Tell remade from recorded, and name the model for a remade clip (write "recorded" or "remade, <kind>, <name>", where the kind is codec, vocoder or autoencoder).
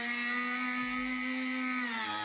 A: recorded